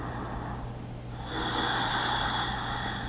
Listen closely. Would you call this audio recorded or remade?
recorded